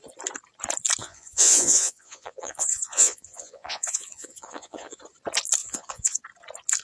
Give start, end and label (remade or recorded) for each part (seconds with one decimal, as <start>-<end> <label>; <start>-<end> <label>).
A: 0.0-1.0 recorded; 1.0-5.0 remade; 5.0-5.6 recorded; 5.6-6.2 remade; 6.2-6.8 recorded